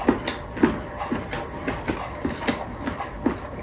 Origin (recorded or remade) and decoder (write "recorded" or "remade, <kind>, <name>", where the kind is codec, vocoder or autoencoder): recorded